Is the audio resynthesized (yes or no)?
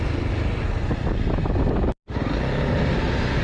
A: no